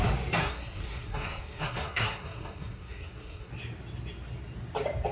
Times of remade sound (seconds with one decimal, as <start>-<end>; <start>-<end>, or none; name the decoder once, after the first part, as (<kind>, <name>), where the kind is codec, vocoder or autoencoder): 0.4-3.5 (codec, SNAC)